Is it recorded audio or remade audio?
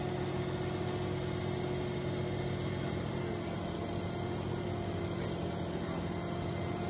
recorded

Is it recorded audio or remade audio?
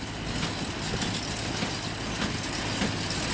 recorded